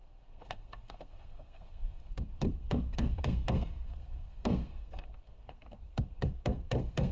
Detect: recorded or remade remade